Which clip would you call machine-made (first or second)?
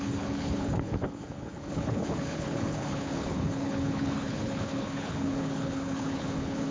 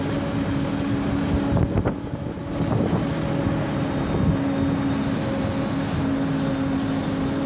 first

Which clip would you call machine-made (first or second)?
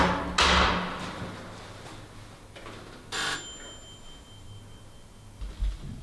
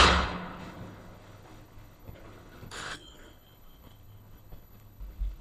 second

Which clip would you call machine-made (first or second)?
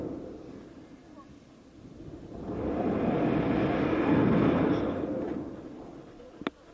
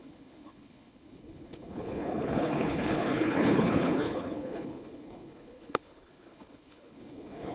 second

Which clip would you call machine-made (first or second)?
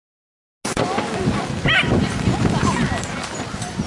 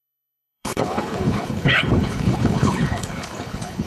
second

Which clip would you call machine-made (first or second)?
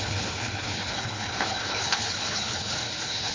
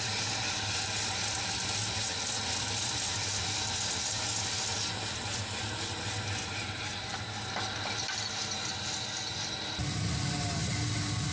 first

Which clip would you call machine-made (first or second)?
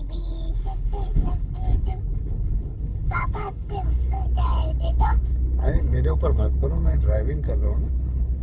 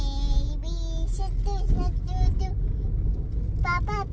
first